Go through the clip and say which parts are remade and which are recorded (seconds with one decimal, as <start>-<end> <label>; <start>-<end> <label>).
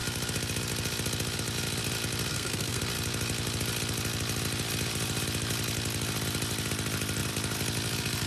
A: 0.0-2.3 recorded; 2.3-2.8 remade; 2.8-8.3 recorded